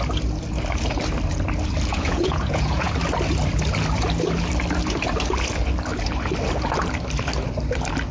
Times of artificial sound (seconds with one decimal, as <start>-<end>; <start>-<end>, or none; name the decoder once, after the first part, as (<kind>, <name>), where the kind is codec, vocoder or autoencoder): 1.9-2.9 (vocoder, Vocos)